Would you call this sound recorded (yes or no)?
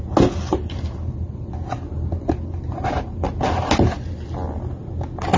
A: yes